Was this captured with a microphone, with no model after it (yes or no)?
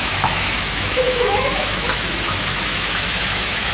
no